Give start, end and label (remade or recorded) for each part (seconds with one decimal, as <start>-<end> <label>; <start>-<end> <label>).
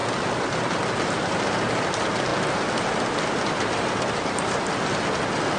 0.0-5.6 recorded